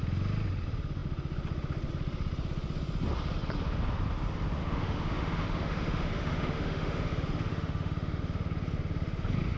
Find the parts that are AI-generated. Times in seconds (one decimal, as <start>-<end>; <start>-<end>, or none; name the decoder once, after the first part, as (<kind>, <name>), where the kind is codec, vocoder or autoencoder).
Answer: 4.6-7.1 (autoencoder, DAC-VAE); 7.5-8.2

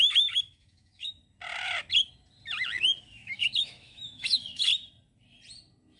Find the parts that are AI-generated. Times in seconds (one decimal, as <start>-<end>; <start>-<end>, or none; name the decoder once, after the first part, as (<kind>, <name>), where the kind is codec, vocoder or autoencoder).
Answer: 0.0-1.2 (autoencoder, DAC-VAE); 3.0-4.7

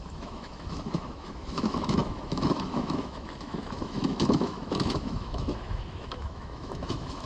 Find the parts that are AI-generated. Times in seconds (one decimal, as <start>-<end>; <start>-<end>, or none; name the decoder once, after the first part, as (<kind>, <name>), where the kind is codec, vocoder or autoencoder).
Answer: 0.0-7.3 (autoencoder, DAC-VAE)

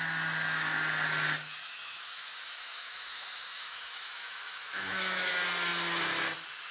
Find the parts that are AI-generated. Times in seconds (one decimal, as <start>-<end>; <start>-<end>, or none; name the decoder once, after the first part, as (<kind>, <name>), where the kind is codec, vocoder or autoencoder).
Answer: 1.7-5.3 (autoencoder, DAC-VAE)

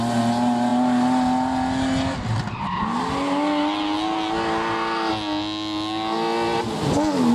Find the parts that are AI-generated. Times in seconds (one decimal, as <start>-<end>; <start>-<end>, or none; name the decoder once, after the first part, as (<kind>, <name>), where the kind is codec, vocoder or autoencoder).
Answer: none

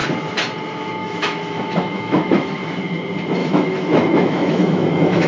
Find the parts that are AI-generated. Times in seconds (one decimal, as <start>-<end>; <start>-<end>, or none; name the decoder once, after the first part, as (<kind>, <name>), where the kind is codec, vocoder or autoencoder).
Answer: 1.0-2.8 (autoencoder, DAC-VAE); 3.4-5.3

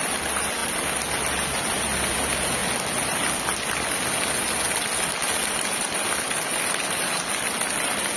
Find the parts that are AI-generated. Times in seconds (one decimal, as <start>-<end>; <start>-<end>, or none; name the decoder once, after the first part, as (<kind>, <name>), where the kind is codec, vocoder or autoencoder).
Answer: none

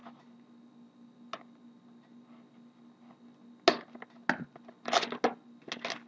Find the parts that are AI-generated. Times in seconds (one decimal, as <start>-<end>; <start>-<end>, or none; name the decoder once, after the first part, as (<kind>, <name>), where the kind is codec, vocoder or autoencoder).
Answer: none